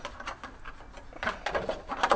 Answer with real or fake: real